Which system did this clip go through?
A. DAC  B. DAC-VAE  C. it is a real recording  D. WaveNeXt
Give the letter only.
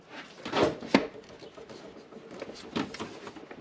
C